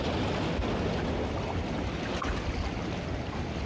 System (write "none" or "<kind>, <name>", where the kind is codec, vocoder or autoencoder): none